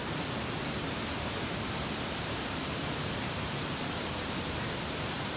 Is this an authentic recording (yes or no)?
no